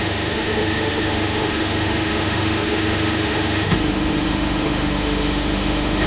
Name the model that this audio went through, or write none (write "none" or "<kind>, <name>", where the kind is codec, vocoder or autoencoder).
autoencoder, DAC-VAE